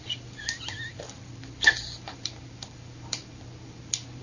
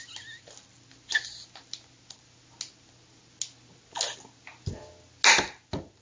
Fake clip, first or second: first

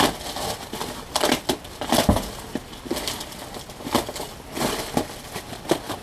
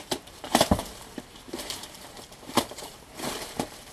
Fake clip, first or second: second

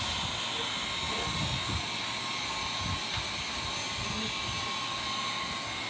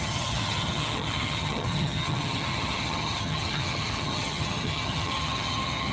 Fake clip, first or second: second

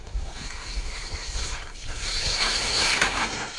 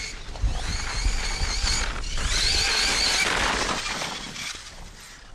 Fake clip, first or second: first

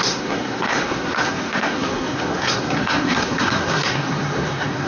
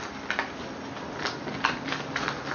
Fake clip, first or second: first